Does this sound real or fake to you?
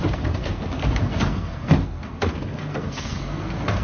fake